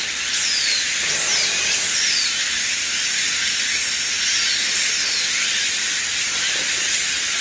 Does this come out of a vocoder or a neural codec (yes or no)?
no